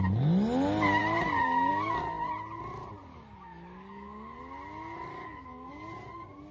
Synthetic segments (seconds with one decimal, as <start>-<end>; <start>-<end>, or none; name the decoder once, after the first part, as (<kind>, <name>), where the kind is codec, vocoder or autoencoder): 3.1-4.4 (codec, DAC); 5.1-5.7